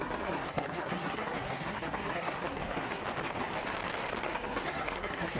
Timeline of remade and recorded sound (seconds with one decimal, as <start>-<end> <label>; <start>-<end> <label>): 0.0-3.0 remade; 3.0-4.2 recorded; 4.2-5.4 remade